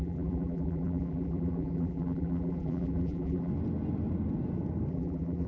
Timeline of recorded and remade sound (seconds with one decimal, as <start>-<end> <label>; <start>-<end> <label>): 0.0-3.5 remade; 3.5-4.9 recorded; 4.9-5.5 remade